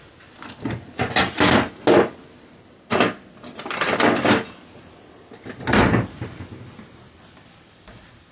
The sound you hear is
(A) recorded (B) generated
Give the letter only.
A